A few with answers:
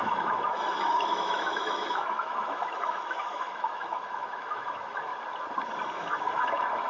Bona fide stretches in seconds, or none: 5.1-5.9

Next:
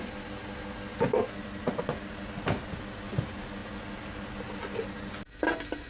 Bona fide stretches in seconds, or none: 0.0-5.9

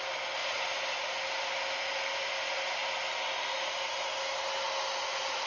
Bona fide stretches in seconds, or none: 0.0-5.5

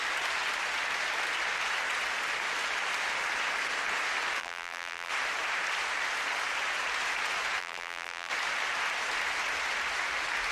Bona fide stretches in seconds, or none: 0.0-4.4; 5.1-7.6; 8.3-10.5